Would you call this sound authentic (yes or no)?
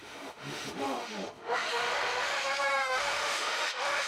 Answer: no